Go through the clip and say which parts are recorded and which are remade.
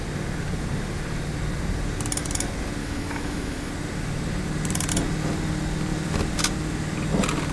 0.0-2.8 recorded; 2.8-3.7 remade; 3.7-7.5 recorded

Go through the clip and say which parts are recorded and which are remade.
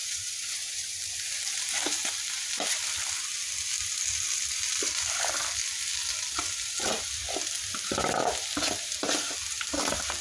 0.0-0.8 remade; 0.8-10.2 recorded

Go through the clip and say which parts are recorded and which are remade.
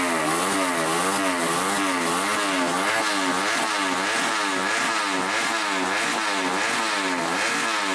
0.0-7.9 recorded